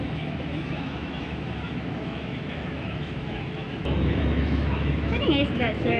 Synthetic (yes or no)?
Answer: yes